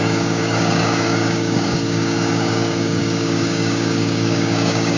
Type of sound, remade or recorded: remade